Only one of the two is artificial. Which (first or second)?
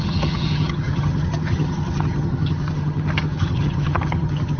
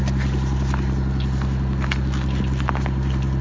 first